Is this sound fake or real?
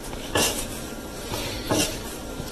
real